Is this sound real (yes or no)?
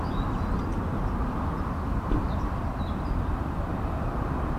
yes